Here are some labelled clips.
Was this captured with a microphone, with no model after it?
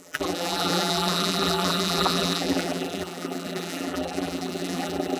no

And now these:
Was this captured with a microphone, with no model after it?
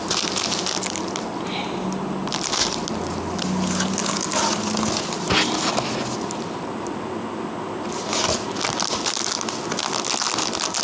yes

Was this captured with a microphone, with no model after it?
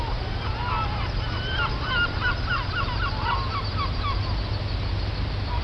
yes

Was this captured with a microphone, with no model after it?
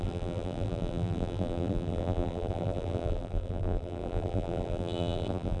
no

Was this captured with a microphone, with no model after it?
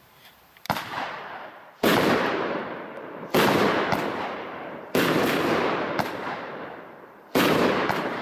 no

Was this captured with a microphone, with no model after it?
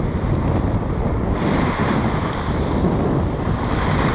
yes